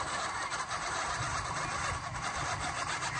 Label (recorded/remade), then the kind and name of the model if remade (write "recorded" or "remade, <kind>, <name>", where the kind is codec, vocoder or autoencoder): remade, vocoder, BigVGAN v2